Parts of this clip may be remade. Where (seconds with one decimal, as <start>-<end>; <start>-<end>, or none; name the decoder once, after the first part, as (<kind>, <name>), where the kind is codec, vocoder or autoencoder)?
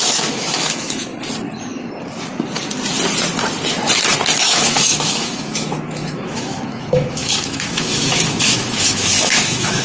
0.0-1.1 (autoencoder, DAC-VAE); 4.4-9.8